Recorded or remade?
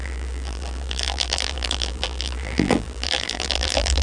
remade